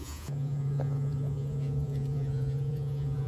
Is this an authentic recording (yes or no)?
no